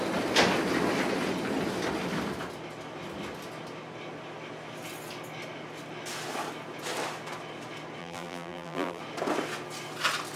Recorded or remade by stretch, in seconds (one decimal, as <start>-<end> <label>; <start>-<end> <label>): 0.0-8.0 recorded; 8.0-9.0 remade; 9.0-10.4 recorded